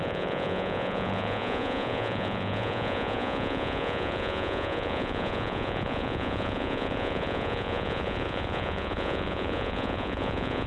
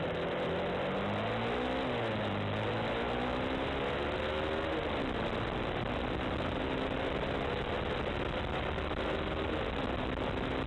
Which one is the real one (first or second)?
second